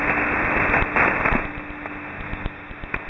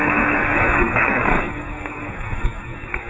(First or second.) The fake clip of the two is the second